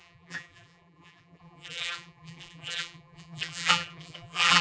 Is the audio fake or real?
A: fake